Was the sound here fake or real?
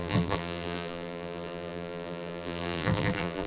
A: fake